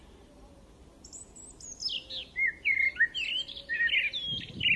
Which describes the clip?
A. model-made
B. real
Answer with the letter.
B